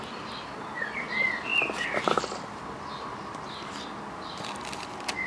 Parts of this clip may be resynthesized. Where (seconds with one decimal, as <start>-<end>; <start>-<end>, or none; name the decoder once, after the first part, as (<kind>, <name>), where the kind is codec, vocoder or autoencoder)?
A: none